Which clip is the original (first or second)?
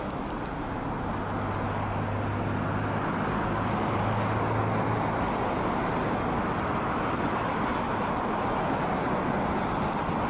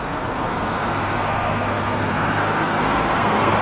first